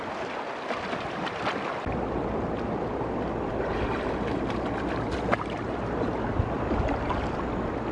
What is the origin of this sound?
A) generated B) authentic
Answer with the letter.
B